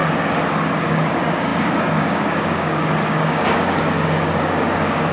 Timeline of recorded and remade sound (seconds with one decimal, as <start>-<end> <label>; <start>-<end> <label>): 0.0-0.8 recorded; 0.8-5.1 remade